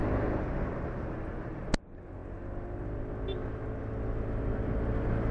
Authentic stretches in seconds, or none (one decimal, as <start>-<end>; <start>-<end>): 0.0-5.3